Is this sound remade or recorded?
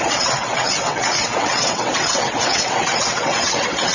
remade